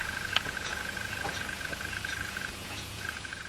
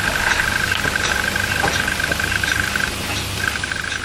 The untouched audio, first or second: second